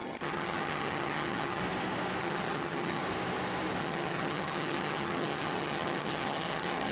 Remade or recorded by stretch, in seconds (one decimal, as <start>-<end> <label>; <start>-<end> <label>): 0.0-1.6 remade; 1.6-2.2 recorded; 2.2-3.0 remade; 3.0-3.8 recorded; 3.8-6.9 remade